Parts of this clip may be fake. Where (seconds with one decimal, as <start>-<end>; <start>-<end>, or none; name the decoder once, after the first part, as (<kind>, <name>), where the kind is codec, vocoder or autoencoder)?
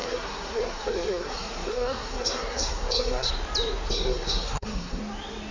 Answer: 0.0-3.3 (codec, SNAC); 3.9-5.0